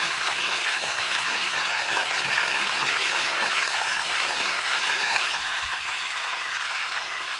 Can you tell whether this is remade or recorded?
remade